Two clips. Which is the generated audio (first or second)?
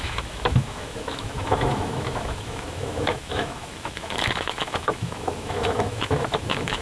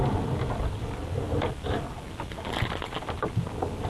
first